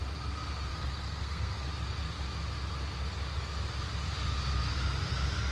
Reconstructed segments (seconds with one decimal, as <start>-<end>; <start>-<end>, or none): 0.7-1.7